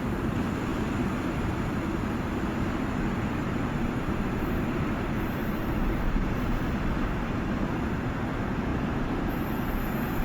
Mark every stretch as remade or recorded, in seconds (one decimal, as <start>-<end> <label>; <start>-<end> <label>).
0.0-10.2 remade